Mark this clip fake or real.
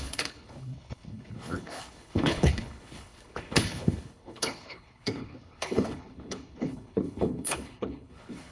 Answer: fake